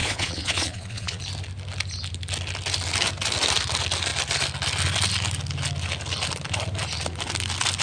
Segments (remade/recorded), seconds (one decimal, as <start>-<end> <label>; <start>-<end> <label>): 0.0-1.2 remade; 1.2-7.8 recorded